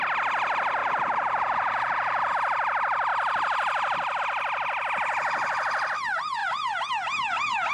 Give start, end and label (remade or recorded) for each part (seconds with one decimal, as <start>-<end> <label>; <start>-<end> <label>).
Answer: 0.0-0.8 recorded; 0.8-2.3 remade; 2.3-7.7 recorded